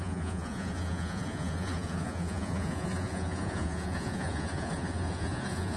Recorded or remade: remade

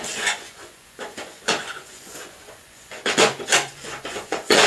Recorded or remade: remade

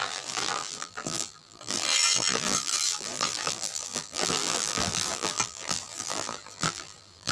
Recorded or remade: remade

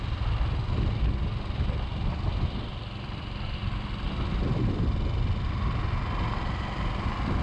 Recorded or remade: recorded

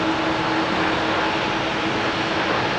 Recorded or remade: recorded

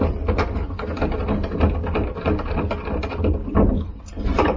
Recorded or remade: recorded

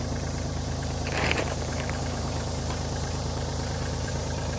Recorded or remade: remade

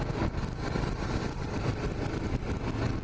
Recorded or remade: recorded